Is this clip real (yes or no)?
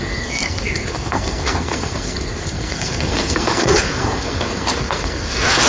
no